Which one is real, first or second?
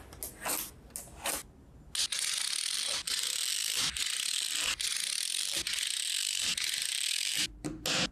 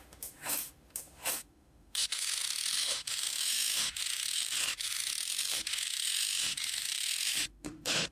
first